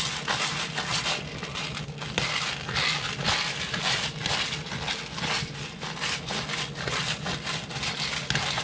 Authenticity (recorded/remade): recorded